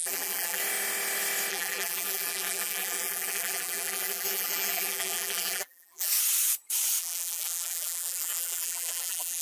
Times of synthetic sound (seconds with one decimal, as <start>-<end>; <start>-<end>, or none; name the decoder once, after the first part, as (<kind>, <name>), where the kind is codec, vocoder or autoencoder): 0.0-0.6 (vocoder, BigVGAN v2); 1.5-6.1; 7.0-9.4